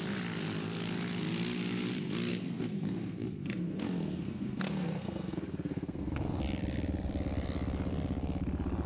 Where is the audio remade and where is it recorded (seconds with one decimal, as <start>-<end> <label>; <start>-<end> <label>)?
0.0-2.3 recorded; 2.3-6.4 remade; 6.4-8.9 recorded